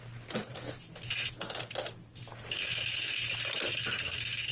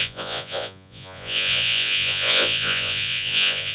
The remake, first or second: second